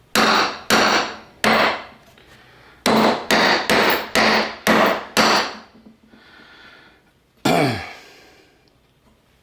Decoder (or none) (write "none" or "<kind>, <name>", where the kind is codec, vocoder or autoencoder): none